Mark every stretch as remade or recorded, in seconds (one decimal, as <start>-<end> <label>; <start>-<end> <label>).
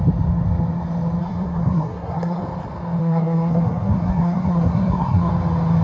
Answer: 0.0-1.2 recorded; 1.2-2.4 remade; 2.4-3.0 recorded; 3.0-5.3 remade; 5.3-5.8 recorded